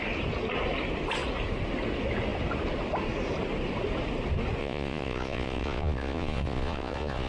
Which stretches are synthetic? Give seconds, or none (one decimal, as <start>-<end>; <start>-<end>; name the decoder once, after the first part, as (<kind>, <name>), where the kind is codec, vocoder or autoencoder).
4.6-7.3 (vocoder, Vocos)

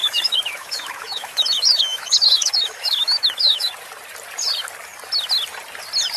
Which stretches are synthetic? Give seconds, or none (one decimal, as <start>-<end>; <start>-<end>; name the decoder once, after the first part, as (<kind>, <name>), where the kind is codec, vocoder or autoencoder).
0.0-3.7 (autoencoder, DAC-VAE)

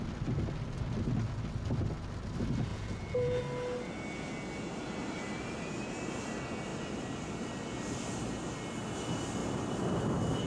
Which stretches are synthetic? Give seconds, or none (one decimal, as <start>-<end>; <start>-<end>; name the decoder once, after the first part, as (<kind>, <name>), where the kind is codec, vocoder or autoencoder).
2.7-3.4 (vocoder, Vocos)